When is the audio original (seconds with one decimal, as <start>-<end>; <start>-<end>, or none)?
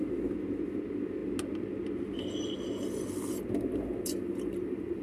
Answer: 0.0-5.0